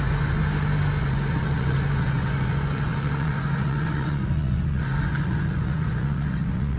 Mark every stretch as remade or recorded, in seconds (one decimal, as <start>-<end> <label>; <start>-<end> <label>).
0.0-0.4 remade; 0.4-1.0 recorded; 1.0-6.8 remade